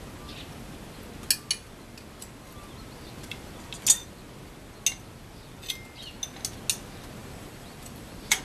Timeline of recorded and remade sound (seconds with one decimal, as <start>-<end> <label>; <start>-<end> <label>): 0.0-7.2 recorded; 7.2-8.4 remade